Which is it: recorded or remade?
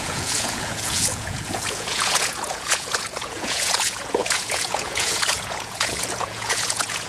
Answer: remade